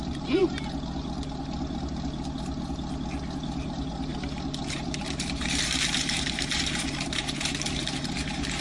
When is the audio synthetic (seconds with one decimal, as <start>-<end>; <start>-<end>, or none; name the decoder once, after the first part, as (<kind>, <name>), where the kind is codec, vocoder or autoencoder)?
0.0-0.4 (vocoder, BigVGAN v2); 3.4-4.1; 4.7-8.6